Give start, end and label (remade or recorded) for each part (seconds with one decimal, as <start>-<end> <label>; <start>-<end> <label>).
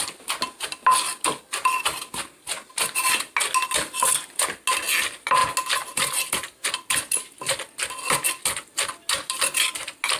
0.0-10.2 recorded